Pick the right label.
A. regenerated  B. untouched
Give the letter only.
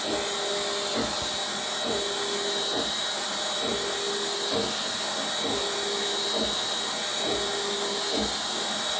B